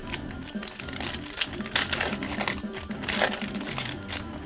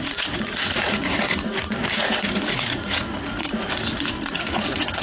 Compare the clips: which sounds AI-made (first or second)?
second